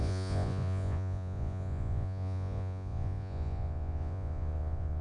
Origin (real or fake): fake